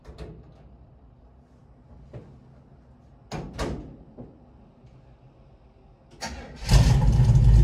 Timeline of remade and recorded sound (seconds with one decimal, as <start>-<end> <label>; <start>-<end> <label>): 0.0-7.6 recorded